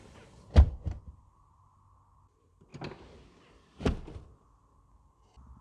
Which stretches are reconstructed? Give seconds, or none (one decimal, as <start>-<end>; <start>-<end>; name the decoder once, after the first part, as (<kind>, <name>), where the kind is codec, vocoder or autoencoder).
none